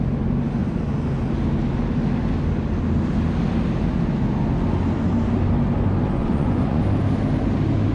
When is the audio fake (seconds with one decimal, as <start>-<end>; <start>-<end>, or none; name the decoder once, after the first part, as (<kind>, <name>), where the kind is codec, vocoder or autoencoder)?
6.2-6.8 (vocoder, Vocos)